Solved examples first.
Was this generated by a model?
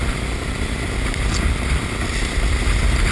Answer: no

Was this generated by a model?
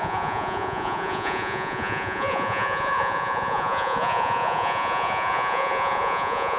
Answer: yes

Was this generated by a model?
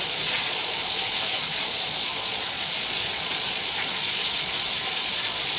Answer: yes